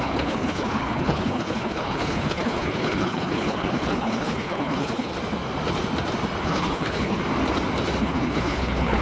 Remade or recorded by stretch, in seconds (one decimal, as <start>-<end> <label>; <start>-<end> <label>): 0.0-5.1 remade; 5.1-6.4 recorded; 6.4-7.2 remade; 7.2-8.0 recorded; 8.0-9.0 remade